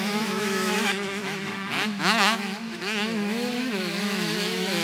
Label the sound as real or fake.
fake